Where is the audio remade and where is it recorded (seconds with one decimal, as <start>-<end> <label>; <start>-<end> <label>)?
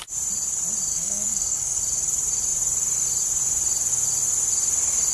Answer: 0.0-0.9 recorded; 0.9-1.8 remade; 1.8-5.1 recorded